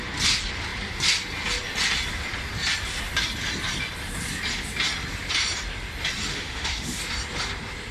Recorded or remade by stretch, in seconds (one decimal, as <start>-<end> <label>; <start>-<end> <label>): 0.0-6.3 recorded; 6.3-7.0 remade; 7.0-7.9 recorded